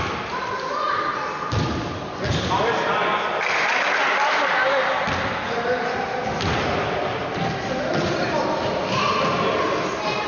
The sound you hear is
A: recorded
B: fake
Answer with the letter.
A